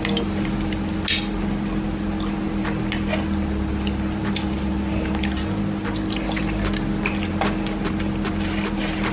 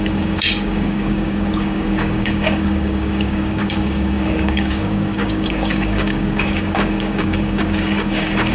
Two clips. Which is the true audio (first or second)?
first